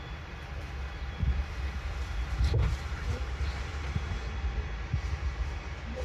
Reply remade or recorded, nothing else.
remade